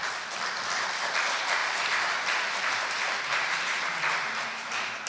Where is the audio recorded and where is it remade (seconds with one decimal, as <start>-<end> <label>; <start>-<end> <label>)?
0.0-1.6 recorded; 1.6-5.1 remade